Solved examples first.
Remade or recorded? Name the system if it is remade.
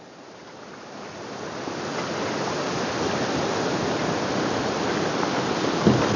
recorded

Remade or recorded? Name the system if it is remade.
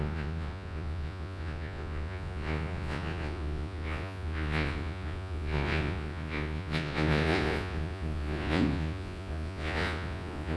remade, vocoder, Vocos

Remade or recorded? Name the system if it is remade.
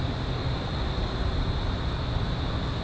recorded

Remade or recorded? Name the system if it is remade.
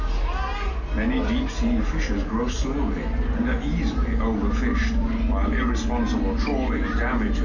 recorded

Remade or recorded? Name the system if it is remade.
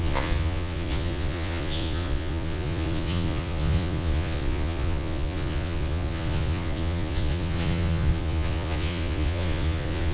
remade, vocoder, Vocos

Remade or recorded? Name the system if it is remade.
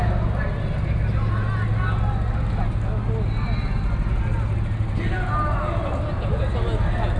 recorded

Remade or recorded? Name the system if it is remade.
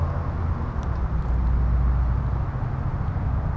recorded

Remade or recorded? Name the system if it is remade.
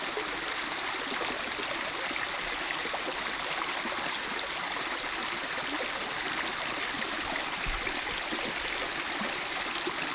recorded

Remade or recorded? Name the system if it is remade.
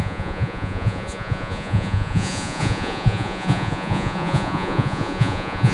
remade, vocoder, Vocos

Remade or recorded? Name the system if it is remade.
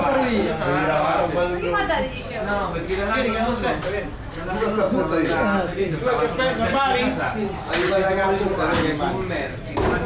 recorded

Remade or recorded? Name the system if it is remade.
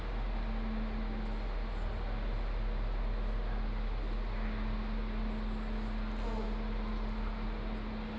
recorded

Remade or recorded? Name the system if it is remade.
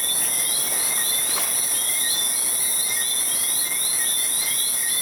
recorded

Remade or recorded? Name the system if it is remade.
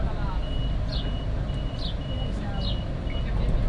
recorded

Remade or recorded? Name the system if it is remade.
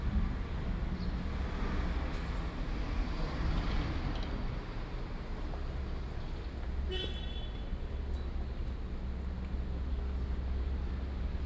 recorded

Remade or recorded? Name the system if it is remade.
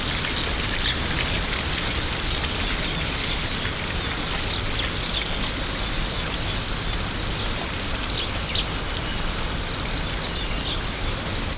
recorded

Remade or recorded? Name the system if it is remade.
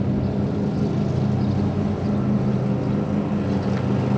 recorded